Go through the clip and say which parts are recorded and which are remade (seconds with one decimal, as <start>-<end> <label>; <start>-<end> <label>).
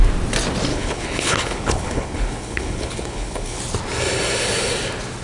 0.0-0.7 recorded; 0.7-3.6 remade; 3.6-5.2 recorded